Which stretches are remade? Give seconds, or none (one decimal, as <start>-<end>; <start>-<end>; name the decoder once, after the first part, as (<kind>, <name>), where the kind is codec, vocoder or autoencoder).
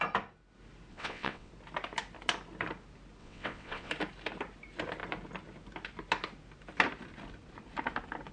0.9-1.5 (vocoder, WaveNeXt); 3.2-3.9